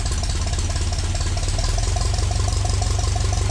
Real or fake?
real